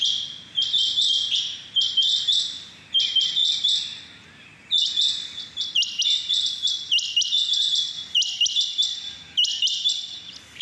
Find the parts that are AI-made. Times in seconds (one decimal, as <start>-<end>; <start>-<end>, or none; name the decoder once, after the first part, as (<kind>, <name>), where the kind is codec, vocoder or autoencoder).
none